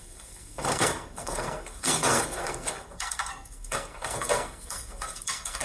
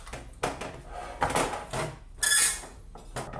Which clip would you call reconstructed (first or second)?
first